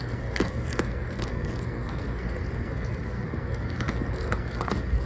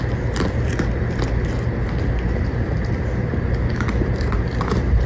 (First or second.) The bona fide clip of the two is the second